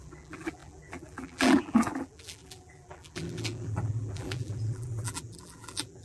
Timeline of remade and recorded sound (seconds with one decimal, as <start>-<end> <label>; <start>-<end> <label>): 0.0-6.0 remade